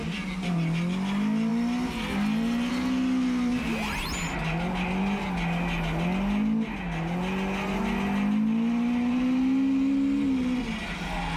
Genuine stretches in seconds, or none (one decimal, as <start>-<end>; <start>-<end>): 0.0-11.4